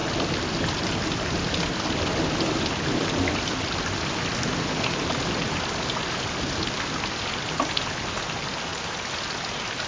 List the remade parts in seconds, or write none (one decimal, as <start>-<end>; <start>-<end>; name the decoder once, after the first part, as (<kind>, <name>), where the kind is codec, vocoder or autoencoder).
none